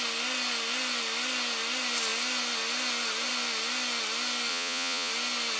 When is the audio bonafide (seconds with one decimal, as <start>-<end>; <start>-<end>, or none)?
0.0-4.5; 5.1-5.6